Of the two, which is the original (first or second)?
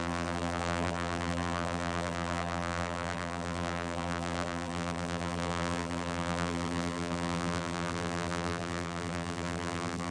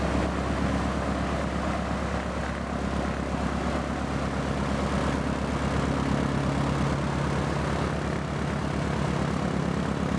second